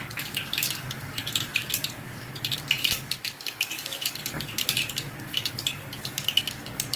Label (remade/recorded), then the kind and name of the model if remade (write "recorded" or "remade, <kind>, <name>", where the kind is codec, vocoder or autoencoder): remade, codec, DAC